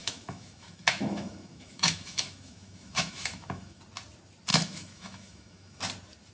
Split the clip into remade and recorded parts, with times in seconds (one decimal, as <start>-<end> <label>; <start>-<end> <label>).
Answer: 0.0-3.8 remade; 3.8-4.5 recorded; 4.5-5.8 remade; 5.8-6.3 recorded